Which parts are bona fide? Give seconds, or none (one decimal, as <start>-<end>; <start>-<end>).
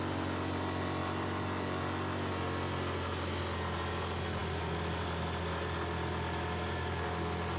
0.0-7.6